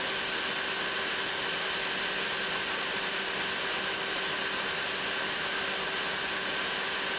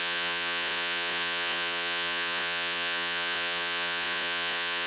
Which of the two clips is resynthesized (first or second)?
second